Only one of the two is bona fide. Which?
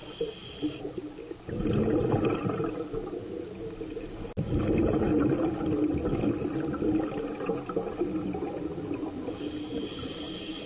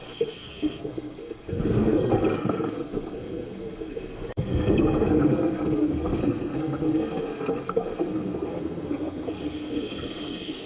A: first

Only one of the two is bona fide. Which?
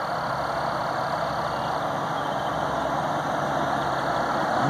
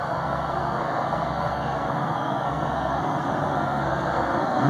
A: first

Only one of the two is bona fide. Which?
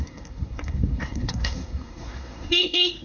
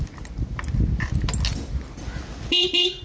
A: second